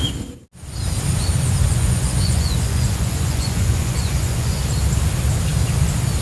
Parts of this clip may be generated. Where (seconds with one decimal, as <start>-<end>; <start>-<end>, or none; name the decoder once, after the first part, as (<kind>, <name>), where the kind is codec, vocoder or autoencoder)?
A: 1.7-4.6 (vocoder, Vocos)